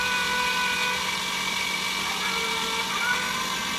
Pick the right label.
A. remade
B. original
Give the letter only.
B